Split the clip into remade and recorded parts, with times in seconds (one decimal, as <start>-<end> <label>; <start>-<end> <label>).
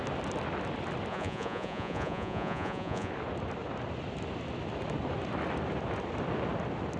0.0-1.1 recorded; 1.1-3.1 remade; 3.1-7.0 recorded